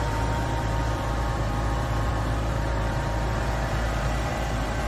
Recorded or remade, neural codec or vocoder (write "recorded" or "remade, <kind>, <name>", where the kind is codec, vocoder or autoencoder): remade, vocoder, BigVGAN v2